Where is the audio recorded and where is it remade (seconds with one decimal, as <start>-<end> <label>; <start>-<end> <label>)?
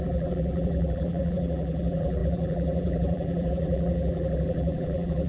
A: 0.0-5.3 remade